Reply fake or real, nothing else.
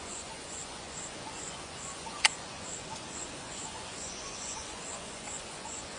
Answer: fake